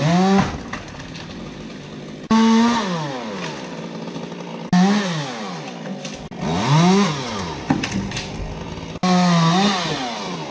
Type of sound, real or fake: real